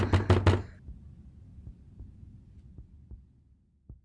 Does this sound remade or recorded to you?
recorded